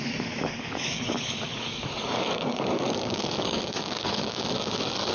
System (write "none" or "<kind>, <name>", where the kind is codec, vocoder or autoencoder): codec, DAC